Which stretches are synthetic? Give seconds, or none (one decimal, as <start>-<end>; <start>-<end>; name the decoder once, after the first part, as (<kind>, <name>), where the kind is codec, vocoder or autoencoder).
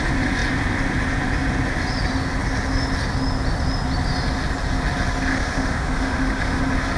5.3-6.6 (autoencoder, DAC-VAE)